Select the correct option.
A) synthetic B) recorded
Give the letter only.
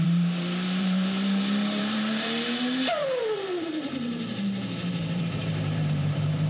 A